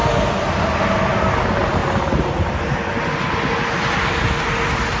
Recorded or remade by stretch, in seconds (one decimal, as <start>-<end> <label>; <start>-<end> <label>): 0.0-1.8 recorded; 1.8-2.3 remade; 2.3-5.0 recorded